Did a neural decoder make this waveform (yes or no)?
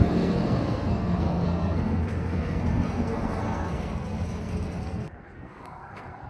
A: yes